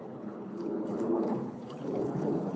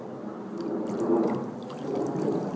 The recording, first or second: second